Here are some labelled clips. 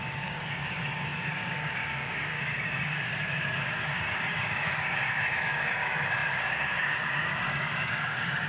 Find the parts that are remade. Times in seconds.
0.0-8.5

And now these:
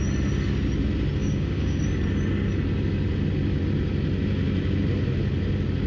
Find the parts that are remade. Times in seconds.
1.2-1.8